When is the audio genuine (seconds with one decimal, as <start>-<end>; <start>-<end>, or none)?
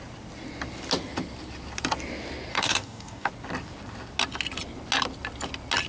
0.0-2.5; 3.3-5.9